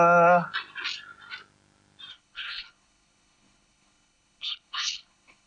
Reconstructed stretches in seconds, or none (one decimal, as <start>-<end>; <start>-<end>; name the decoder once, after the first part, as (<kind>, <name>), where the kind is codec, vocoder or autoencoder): 2.1-5.5 (codec, HILCodec)